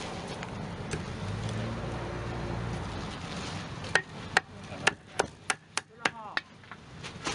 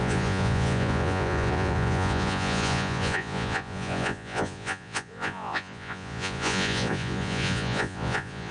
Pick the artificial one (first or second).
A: second